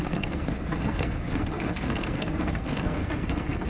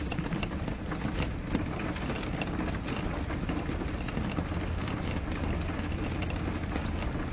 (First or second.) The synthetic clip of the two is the first